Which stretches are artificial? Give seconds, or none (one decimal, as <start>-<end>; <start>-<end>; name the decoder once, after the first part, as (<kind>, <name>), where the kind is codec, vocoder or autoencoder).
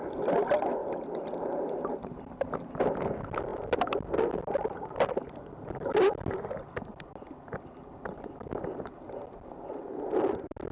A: 0.8-2.8 (vocoder, BigVGAN v2)